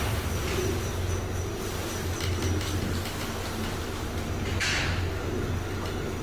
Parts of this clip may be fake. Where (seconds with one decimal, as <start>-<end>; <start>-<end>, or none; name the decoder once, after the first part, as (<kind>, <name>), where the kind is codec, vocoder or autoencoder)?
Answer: none